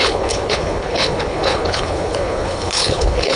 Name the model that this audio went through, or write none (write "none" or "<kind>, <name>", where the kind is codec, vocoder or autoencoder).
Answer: codec, HILCodec